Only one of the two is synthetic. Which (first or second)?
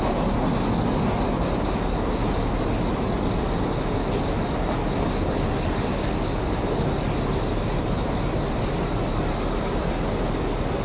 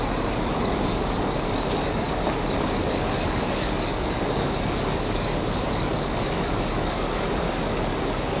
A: second